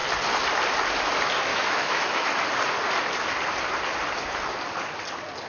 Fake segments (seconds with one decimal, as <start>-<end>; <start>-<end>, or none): 1.5-2.3